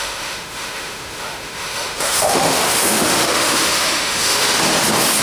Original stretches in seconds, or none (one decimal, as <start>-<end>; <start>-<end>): 4.5-5.2